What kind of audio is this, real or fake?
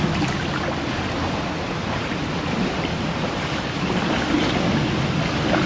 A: real